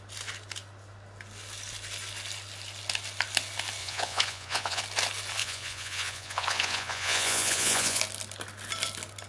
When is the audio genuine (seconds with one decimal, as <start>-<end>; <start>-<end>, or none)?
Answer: 0.0-3.8; 4.8-5.4; 8.0-9.3